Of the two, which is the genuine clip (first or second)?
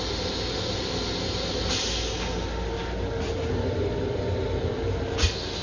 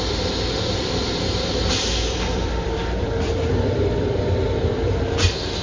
first